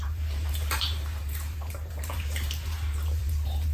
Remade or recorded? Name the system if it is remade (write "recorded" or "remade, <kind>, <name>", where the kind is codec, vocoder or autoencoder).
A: remade, vocoder, BigVGAN v2